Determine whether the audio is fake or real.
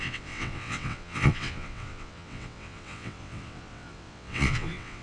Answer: fake